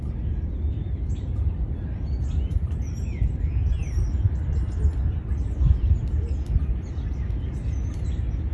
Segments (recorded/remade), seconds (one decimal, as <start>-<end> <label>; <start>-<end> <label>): 0.0-8.5 recorded